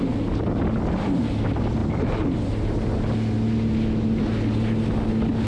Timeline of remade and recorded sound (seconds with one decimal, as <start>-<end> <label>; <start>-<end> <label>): 0.0-5.5 recorded